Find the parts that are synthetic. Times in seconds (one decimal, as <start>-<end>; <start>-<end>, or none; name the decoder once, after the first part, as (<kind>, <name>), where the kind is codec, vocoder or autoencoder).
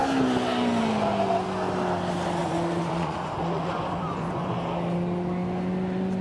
2.4-4.5 (vocoder, Vocos)